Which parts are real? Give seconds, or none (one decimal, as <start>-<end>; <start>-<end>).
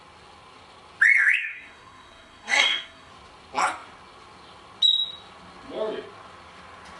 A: 0.0-1.4; 3.1-7.0